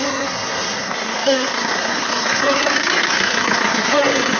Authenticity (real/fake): fake